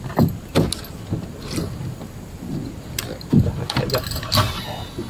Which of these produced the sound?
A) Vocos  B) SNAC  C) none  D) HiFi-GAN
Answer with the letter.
C